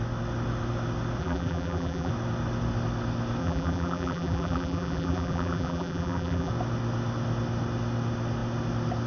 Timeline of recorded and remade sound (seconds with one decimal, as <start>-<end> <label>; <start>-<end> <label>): 0.0-1.2 recorded; 1.2-2.1 remade; 2.1-3.4 recorded; 3.4-6.5 remade; 6.5-9.1 recorded